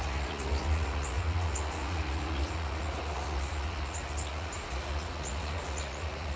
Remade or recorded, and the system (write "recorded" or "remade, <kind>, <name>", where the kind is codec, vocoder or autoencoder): remade, vocoder, Vocos